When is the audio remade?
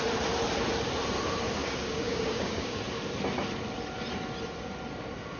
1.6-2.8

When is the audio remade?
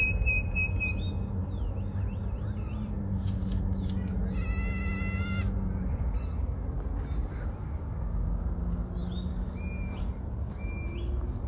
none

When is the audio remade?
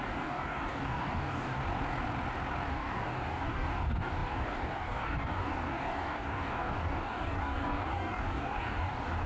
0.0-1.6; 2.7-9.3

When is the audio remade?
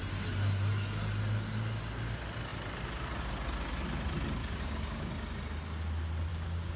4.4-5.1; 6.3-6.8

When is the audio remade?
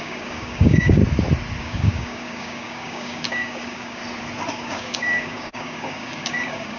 0.0-1.0; 1.6-4.0; 4.5-6.8